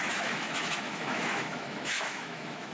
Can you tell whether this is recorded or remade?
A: remade